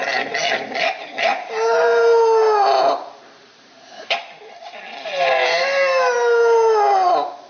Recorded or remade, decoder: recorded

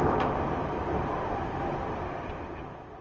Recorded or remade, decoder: remade, vocoder, BigVGAN v2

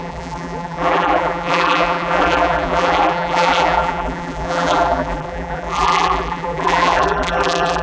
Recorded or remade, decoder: remade, vocoder, BigVGAN v2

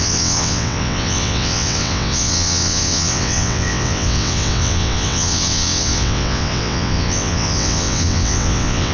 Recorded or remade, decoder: remade, vocoder, WaveNeXt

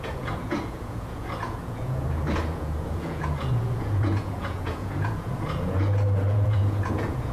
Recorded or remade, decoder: remade, vocoder, Vocos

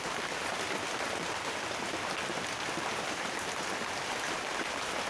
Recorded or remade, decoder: recorded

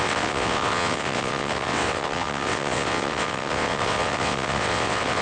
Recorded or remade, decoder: remade, vocoder, WaveNeXt